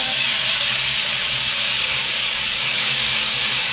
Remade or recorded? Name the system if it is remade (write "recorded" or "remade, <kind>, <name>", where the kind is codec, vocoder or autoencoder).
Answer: remade, codec, DAC